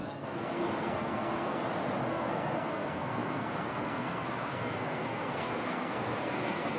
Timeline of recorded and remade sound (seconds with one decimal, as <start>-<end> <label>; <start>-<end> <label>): 0.0-1.6 remade; 1.6-2.1 recorded; 2.1-6.8 remade